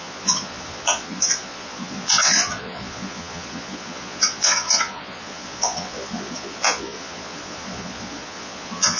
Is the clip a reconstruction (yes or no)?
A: yes